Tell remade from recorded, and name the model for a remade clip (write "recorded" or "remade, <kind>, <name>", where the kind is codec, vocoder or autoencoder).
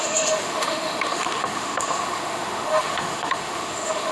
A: remade, autoencoder, DAC-VAE